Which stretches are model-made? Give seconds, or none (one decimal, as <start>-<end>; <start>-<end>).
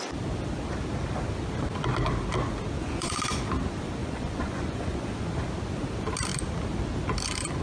2.8-3.4; 4.0-5.3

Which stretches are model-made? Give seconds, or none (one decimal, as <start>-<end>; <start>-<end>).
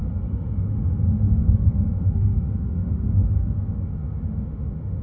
0.0-5.0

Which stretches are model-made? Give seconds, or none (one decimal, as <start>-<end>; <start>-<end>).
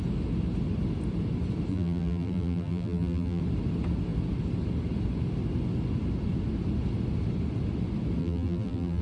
1.7-3.4; 8.2-9.0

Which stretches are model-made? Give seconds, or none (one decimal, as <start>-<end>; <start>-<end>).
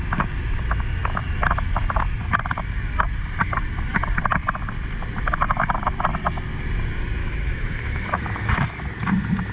7.2-8.5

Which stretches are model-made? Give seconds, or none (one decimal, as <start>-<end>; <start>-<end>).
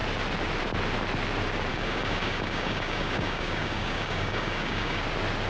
1.7-5.0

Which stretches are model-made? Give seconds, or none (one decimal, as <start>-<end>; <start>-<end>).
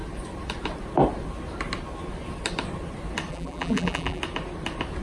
3.3-4.2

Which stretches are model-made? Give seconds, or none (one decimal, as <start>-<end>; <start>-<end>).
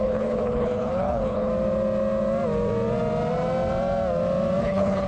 0.0-1.5; 4.6-5.1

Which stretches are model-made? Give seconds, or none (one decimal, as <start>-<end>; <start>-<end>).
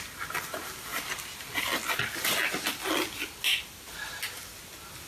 none